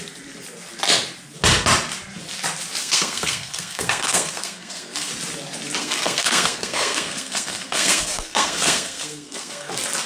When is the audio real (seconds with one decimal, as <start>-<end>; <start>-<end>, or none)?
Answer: 0.0-2.8; 5.1-5.8; 9.7-10.1